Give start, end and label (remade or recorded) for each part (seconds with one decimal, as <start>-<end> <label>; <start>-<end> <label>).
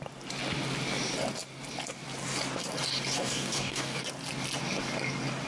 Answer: 0.0-3.2 recorded; 3.2-4.0 remade; 4.0-5.5 recorded